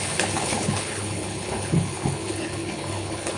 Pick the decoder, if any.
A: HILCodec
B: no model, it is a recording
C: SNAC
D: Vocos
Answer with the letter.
A